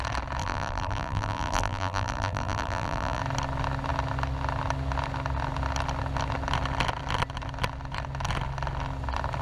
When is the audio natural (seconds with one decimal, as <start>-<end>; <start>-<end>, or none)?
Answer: 0.0-0.4; 3.2-9.4

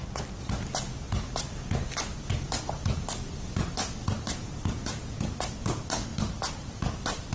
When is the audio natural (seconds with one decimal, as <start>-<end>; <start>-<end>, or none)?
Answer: 0.0-6.1

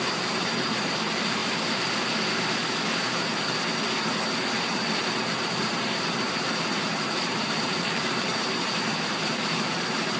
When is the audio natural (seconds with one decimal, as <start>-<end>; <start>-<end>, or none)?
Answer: 1.4-5.4

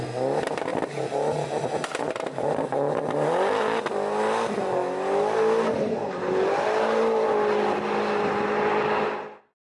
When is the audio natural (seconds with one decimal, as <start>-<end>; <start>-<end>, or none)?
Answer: 0.0-0.7; 1.6-9.7

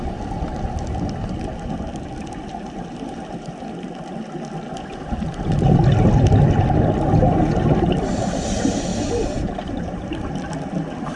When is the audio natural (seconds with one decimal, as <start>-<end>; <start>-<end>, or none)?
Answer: 0.0-8.9; 10.3-11.2